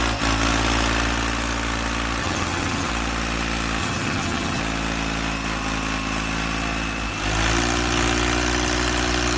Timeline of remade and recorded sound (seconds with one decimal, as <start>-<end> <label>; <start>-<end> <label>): 0.0-2.2 recorded; 2.2-2.9 remade; 2.9-3.8 recorded; 3.8-4.6 remade; 4.6-9.4 recorded